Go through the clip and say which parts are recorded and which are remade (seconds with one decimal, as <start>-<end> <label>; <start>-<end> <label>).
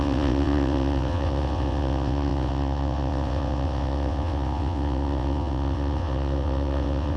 0.0-7.2 remade